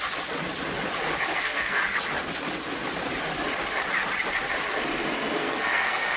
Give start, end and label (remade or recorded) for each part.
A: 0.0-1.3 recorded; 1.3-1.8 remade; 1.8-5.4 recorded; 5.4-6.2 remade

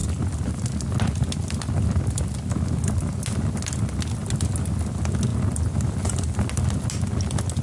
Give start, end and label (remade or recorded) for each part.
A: 0.0-7.6 recorded

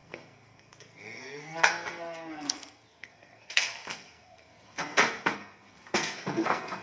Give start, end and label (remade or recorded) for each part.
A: 0.0-6.8 remade

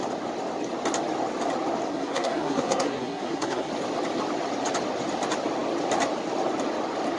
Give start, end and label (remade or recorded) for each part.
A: 0.0-1.9 recorded; 1.9-3.7 remade; 3.7-7.2 recorded

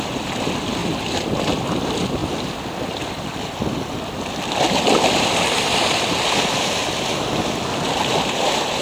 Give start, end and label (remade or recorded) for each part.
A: 0.0-8.8 recorded